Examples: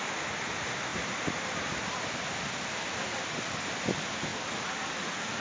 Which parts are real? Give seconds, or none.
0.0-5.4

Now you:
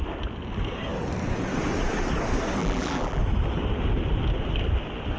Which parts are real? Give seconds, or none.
0.0-2.6; 3.2-5.2

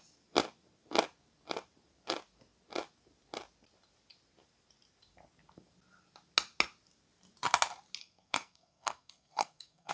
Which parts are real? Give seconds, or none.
0.0-8.0

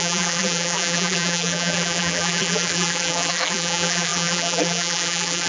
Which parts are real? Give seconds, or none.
none

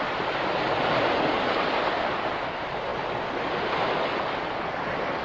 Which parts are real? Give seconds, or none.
0.0-5.2

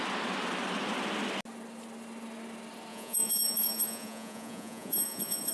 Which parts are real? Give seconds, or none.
0.0-2.9